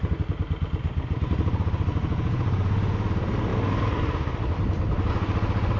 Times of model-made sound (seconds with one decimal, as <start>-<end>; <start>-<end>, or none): 1.9-3.1